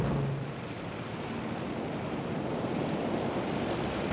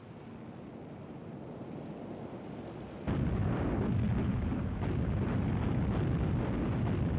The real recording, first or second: second